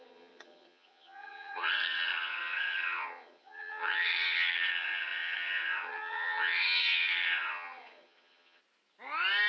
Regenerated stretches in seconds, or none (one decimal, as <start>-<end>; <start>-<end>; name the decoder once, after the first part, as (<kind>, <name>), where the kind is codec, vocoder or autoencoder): 0.0-8.6 (vocoder, HiFi-GAN)